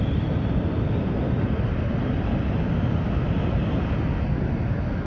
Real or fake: real